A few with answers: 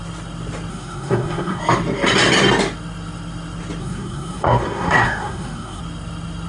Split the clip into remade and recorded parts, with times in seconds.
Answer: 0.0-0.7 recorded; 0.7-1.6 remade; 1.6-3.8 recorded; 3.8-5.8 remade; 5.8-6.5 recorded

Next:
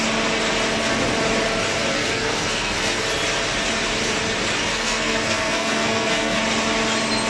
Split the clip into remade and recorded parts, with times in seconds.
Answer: 0.0-1.9 recorded; 1.9-3.0 remade; 3.0-4.7 recorded; 4.7-6.4 remade; 6.4-7.3 recorded

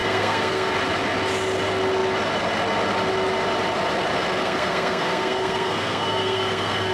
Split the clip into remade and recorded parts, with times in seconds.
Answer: 0.0-0.7 remade; 0.7-4.4 recorded; 4.4-6.9 remade

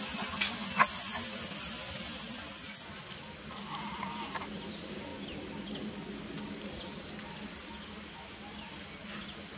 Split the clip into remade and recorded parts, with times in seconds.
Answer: 0.0-9.6 recorded

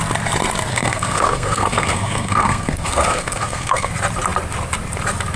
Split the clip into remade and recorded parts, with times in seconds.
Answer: 0.0-0.7 recorded; 0.7-3.9 remade; 3.9-5.4 recorded

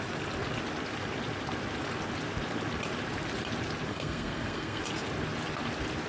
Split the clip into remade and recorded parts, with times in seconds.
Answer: 0.0-3.9 recorded; 3.9-4.8 remade; 4.8-6.1 recorded